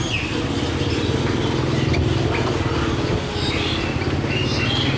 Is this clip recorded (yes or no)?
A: yes